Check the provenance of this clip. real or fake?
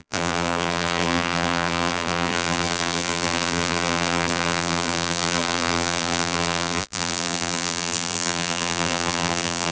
fake